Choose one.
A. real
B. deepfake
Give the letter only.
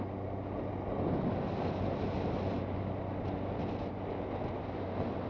A